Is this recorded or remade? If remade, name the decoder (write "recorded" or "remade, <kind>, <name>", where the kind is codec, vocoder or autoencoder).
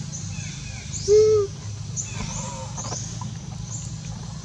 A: recorded